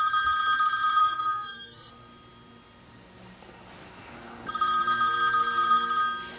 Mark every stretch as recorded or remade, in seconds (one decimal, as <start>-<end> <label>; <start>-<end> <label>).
0.0-1.0 recorded; 1.0-1.9 remade; 1.9-6.4 recorded